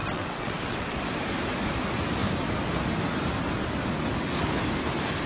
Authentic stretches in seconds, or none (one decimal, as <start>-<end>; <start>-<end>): 1.0-5.3

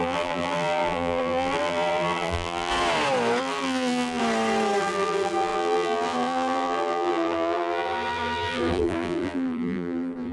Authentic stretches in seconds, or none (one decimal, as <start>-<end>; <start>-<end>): 2.7-3.4; 4.2-4.8

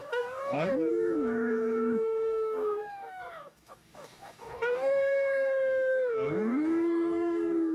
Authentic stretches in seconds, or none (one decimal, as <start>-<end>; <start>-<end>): none

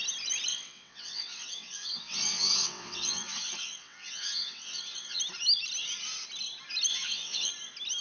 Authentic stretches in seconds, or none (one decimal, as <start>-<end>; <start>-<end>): 0.0-0.5; 5.2-6.9; 7.5-8.0

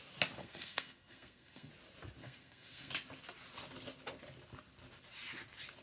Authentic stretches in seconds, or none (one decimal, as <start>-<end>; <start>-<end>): 0.0-0.4; 1.7-2.2; 2.9-5.8

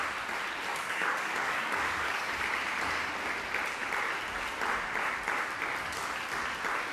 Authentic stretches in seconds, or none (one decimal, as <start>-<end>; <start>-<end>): 0.0-0.7; 2.4-6.9

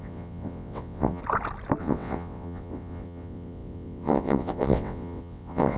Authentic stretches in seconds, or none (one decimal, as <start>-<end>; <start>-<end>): 1.2-1.8